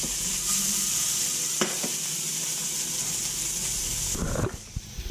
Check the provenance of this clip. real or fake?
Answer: real